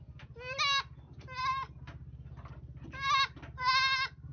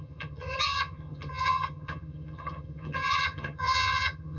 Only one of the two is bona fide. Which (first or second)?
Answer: first